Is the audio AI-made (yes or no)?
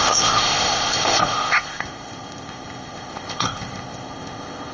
yes